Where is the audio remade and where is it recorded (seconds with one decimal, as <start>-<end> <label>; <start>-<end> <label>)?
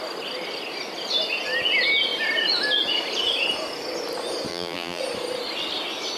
0.0-4.5 recorded; 4.5-5.0 remade; 5.0-6.2 recorded